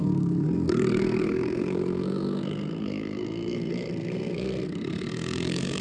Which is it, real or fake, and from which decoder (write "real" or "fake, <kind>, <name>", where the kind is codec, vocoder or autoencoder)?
fake, codec, SNAC